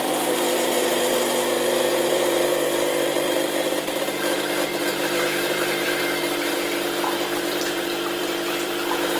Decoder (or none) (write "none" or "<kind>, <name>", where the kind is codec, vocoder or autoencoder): vocoder, BigVGAN v2